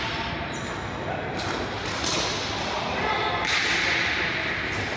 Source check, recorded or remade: recorded